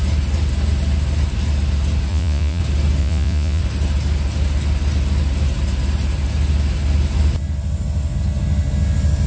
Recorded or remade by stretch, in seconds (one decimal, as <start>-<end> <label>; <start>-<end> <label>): 0.0-2.1 recorded; 2.1-2.6 remade; 2.6-3.0 recorded; 3.0-3.6 remade; 3.6-9.3 recorded

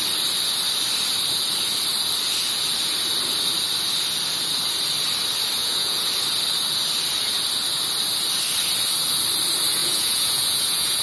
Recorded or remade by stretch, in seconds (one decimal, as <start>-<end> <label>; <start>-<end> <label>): 0.0-5.6 recorded; 5.6-6.1 remade; 6.1-9.8 recorded; 9.8-11.0 remade

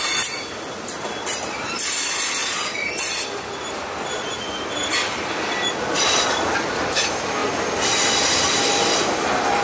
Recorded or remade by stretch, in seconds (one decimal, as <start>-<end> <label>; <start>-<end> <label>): 0.0-9.6 recorded

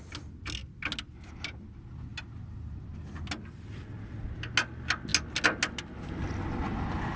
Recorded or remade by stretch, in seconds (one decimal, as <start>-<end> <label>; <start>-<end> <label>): 0.0-7.2 recorded

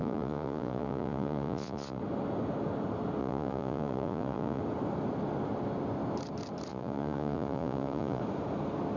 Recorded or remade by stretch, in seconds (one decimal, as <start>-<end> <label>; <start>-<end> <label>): 0.0-2.0 remade; 2.0-3.2 recorded; 3.2-4.6 remade; 4.6-6.7 recorded; 6.7-8.2 remade; 8.2-9.0 recorded

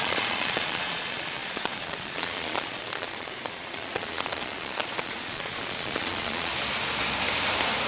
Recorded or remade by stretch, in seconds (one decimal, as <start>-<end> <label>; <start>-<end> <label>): 0.0-6.5 remade; 6.5-7.9 recorded